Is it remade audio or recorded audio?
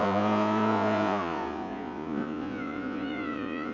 remade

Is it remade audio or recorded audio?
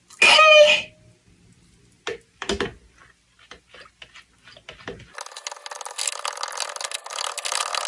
recorded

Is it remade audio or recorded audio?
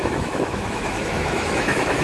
remade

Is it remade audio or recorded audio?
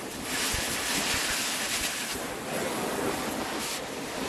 recorded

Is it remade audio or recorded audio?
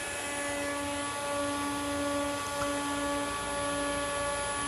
recorded